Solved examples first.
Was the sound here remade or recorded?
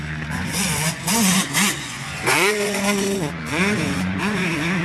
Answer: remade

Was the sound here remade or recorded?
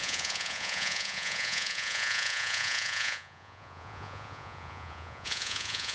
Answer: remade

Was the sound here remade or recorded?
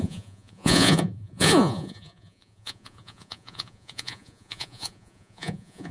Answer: remade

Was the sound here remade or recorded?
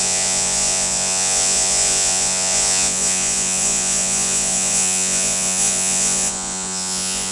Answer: remade